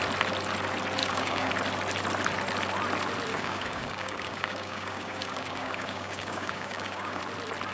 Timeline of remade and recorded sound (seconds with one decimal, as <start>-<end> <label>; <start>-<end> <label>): 0.0-1.0 recorded; 1.0-1.5 remade; 1.5-3.3 recorded; 3.3-7.2 remade; 7.2-7.7 recorded